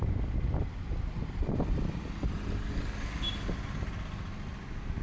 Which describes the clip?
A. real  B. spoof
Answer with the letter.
A